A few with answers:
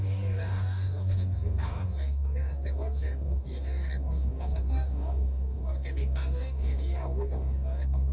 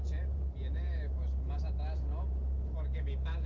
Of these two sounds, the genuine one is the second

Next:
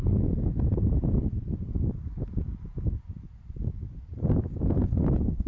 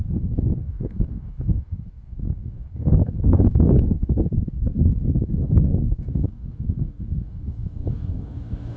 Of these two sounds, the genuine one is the first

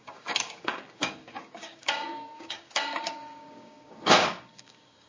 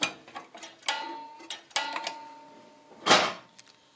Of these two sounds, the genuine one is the second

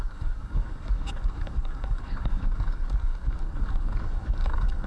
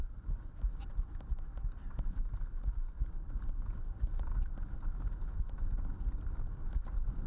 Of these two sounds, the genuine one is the second